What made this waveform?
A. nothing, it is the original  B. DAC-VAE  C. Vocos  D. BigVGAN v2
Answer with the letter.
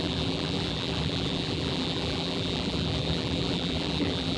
D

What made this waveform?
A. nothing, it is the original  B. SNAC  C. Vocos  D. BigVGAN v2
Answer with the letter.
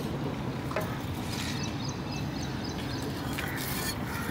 A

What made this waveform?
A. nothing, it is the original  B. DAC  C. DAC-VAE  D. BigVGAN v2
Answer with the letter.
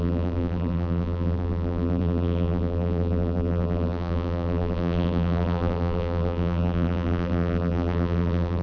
D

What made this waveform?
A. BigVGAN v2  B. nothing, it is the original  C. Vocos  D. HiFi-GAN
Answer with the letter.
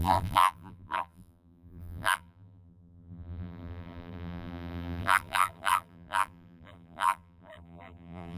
A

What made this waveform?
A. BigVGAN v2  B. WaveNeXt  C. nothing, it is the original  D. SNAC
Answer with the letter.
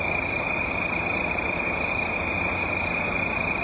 A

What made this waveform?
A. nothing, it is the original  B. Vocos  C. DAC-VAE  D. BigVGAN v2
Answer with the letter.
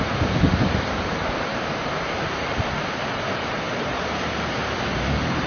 D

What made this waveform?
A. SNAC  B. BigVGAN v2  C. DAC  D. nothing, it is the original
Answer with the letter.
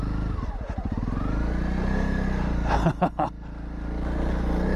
D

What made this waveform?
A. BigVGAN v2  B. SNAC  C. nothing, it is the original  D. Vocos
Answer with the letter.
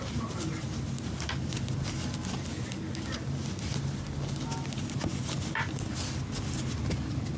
C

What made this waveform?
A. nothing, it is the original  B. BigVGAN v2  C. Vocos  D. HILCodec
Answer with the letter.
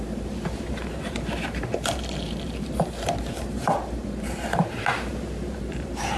B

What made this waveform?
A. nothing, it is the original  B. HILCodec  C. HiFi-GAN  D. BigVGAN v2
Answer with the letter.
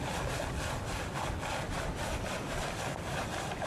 D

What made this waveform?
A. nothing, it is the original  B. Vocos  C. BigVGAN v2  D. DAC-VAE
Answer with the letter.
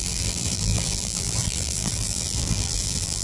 C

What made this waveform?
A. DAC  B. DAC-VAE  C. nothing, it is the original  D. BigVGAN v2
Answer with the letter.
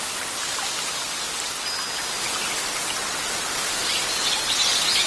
C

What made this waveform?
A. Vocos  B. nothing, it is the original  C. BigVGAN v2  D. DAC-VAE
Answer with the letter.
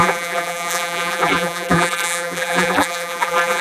C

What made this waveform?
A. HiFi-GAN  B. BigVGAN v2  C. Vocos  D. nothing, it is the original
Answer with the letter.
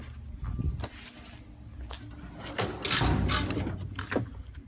D